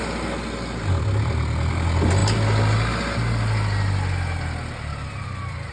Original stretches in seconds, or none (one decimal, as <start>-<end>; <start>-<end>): 0.0-5.7

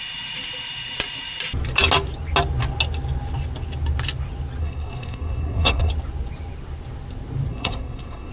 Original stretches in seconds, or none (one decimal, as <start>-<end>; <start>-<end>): 0.0-4.6; 5.9-7.5

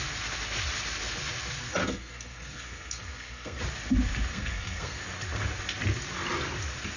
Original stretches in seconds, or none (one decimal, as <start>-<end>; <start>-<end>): 0.0-1.8; 3.6-4.3; 5.0-7.0

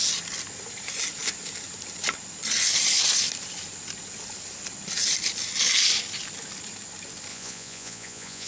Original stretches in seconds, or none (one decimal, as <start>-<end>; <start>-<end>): 0.0-7.3

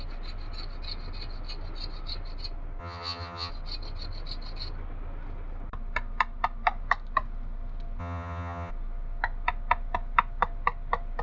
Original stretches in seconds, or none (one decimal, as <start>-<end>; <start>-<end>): 0.0-2.8; 3.5-8.0; 8.7-11.2

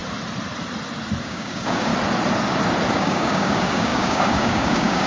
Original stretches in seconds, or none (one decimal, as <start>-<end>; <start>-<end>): 0.0-1.2; 1.9-2.9

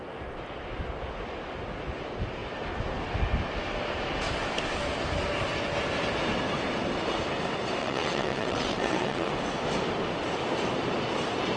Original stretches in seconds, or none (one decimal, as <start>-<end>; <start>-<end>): 0.0-7.8; 9.3-11.6